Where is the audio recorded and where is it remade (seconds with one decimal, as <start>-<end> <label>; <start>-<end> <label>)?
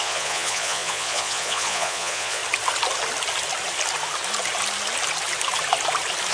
0.0-2.4 remade; 2.4-6.3 recorded